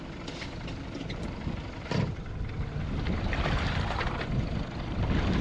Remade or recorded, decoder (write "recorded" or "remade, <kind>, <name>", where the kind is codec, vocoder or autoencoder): remade, vocoder, BigVGAN v2